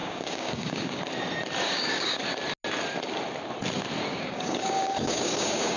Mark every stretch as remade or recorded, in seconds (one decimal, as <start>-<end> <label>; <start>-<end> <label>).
0.0-1.0 remade; 1.0-1.6 recorded; 1.6-2.2 remade; 2.2-4.1 recorded; 4.1-5.8 remade